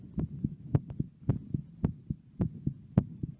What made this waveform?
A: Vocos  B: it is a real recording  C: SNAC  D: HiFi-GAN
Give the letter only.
B